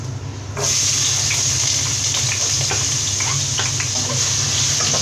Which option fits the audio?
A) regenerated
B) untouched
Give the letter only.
B